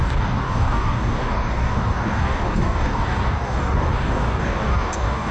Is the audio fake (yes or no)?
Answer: yes